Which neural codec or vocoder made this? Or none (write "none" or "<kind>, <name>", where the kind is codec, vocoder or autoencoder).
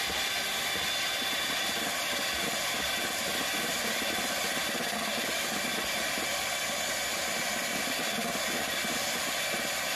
none